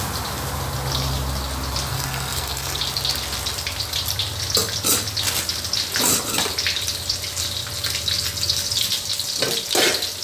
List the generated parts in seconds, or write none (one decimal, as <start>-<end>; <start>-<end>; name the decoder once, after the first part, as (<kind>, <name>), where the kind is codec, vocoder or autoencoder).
1.9-2.8 (codec, SNAC)

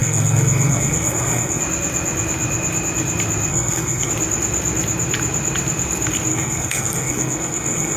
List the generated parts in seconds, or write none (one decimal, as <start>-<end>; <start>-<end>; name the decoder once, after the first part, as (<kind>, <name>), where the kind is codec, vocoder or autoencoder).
0.0-1.6 (codec, SNAC); 3.5-4.1; 6.3-8.0

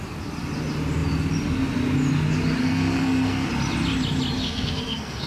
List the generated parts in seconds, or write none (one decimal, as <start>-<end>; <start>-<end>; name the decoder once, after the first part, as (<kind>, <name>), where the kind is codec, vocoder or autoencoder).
2.6-3.5 (codec, SNAC); 4.4-5.3

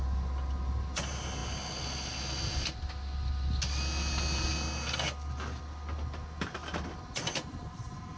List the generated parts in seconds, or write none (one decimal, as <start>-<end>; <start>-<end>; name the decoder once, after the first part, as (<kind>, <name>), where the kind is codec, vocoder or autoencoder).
none

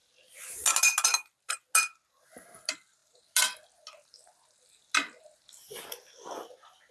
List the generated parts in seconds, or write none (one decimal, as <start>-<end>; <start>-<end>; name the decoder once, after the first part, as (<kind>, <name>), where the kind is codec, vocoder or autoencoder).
none

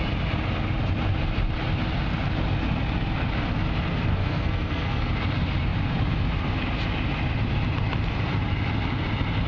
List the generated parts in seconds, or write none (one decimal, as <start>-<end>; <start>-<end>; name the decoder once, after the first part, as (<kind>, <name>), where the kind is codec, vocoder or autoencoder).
4.1-5.1 (codec, SNAC)